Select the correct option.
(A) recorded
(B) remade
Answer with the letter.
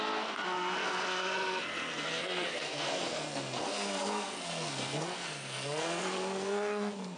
B